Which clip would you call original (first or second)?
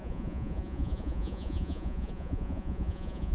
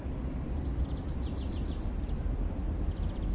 second